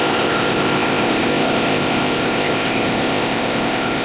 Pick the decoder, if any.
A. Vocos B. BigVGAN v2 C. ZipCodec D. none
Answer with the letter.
C